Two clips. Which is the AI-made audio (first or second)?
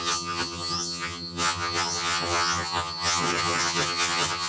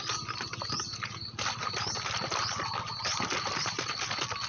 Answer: first